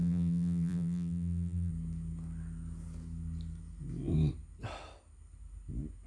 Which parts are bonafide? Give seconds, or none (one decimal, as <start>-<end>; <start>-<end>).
1.7-6.1